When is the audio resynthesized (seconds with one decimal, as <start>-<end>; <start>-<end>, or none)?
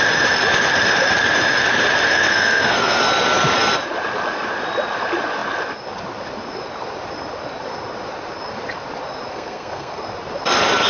2.1-3.0; 9.3-10.0